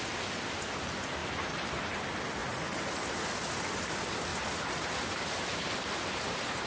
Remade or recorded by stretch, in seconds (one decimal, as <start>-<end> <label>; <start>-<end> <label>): 0.0-1.2 recorded; 1.2-1.9 remade; 1.9-4.3 recorded; 4.3-6.7 remade